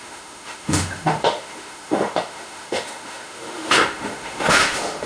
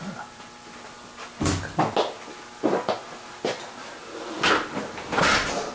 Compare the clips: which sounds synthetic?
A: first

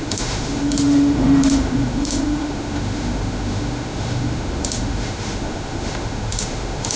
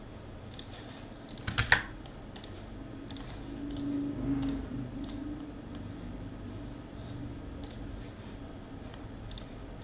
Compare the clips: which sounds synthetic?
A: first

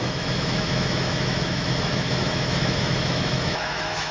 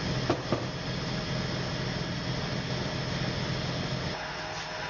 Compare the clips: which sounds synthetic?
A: first